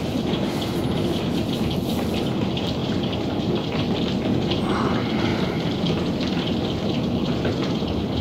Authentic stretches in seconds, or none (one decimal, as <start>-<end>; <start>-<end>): 0.0-2.8; 3.4-5.3; 7.7-8.2